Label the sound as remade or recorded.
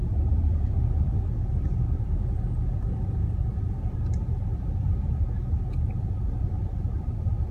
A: remade